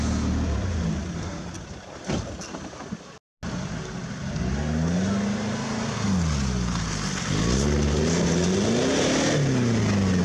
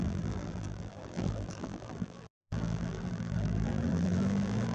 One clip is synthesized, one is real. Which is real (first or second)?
first